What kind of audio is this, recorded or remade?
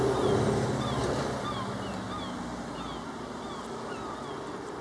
recorded